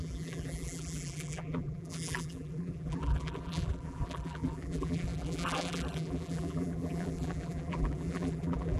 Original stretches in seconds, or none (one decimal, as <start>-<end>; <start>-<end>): none